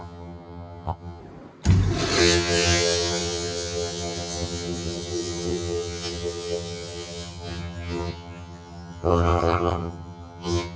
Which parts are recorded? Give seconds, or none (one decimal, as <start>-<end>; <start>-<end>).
1.2-2.2